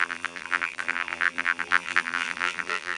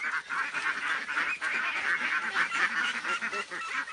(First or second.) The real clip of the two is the second